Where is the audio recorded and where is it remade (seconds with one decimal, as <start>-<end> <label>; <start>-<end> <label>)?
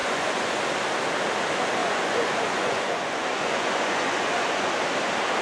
0.0-0.6 remade; 0.6-1.8 recorded; 1.8-4.7 remade; 4.7-5.4 recorded